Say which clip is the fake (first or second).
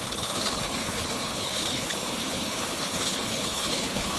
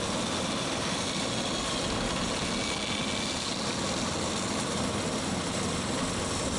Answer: first